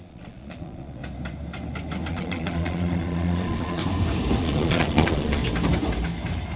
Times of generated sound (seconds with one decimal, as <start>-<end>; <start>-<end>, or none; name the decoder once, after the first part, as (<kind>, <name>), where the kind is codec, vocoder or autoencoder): 0.0-1.0 (vocoder, Vocos); 2.1-3.8; 4.4-5.4